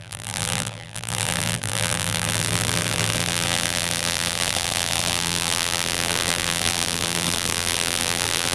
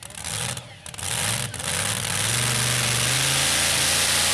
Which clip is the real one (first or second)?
second